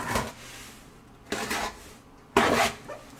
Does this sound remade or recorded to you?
recorded